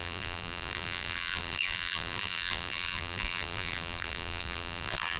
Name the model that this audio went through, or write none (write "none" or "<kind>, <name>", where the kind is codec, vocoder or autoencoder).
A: vocoder, BigVGAN v2